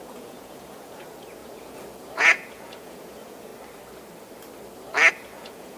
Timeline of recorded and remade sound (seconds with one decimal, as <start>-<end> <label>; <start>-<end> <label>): 0.0-3.5 remade; 3.5-5.1 recorded; 5.1-5.8 remade